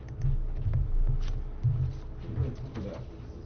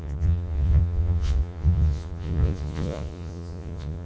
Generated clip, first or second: second